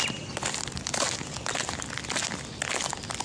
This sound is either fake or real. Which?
real